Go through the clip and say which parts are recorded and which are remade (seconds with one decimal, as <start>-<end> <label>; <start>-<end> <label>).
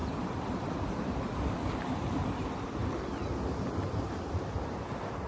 0.0-2.4 remade; 2.4-5.3 recorded